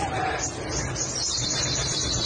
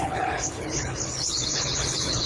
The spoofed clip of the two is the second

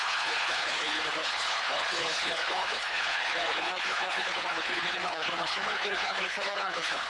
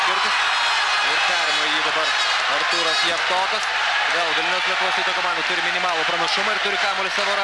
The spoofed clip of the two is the first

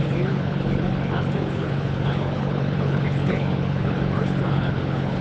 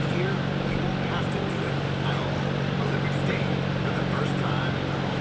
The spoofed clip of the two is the first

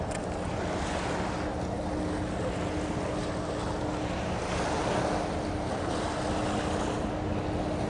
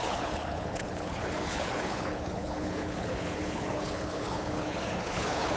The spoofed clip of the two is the second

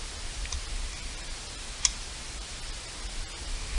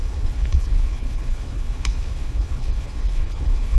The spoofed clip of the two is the second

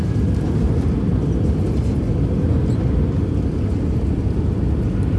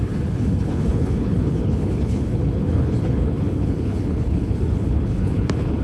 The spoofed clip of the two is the second